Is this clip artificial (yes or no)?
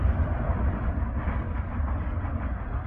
no